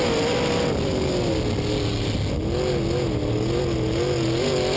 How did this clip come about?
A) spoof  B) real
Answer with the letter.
B